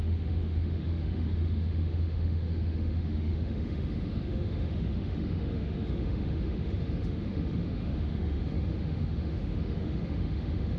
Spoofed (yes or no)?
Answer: yes